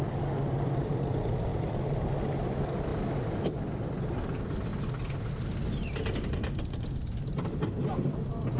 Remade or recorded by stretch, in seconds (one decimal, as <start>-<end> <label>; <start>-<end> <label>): 0.0-8.6 recorded